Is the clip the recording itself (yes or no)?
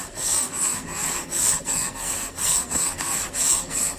no